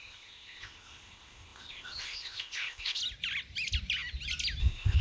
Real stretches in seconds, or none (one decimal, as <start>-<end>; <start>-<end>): 3.0-4.6